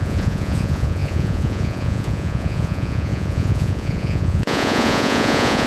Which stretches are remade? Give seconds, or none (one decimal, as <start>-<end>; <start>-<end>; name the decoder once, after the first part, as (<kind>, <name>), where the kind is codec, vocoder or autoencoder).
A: 0.0-5.7 (vocoder, Vocos)